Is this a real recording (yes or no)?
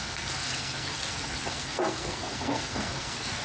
no